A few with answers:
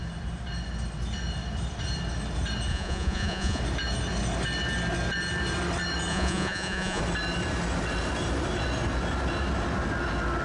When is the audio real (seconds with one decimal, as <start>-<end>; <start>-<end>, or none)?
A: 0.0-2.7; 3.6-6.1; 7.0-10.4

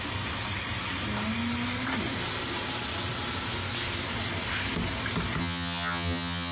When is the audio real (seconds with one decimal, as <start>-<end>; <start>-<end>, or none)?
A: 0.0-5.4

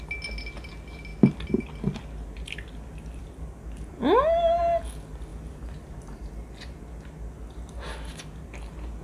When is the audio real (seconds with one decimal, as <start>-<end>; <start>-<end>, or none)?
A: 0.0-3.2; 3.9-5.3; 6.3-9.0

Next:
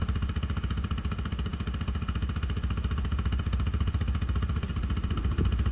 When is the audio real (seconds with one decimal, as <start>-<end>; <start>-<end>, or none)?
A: 0.0-5.7

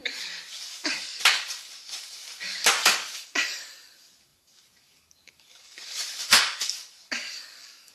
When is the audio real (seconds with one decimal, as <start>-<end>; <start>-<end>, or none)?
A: none